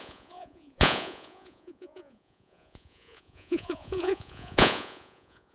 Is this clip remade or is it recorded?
remade